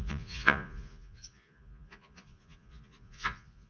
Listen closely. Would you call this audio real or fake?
fake